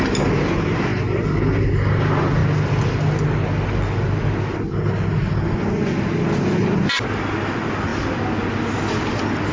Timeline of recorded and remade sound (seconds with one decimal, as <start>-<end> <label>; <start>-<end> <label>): 0.0-9.5 recorded